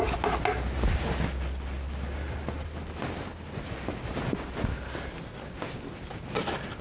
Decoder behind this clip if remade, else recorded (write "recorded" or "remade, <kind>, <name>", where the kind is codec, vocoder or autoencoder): recorded